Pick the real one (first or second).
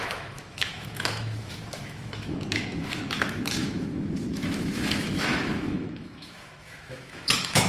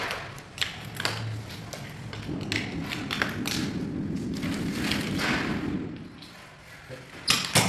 second